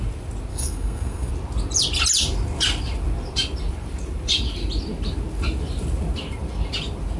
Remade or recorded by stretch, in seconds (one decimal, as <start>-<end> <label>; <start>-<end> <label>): 0.0-0.5 recorded; 0.5-1.3 remade; 1.3-7.2 recorded